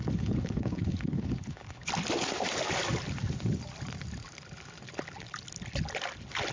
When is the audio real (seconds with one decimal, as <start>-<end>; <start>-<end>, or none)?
1.9-6.5